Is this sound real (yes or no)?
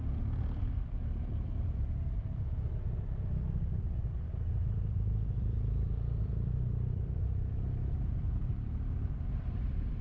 no